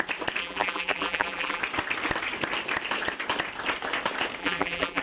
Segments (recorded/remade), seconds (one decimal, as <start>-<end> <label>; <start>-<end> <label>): 0.0-0.4 recorded; 0.4-1.6 remade; 1.6-4.4 recorded; 4.4-5.0 remade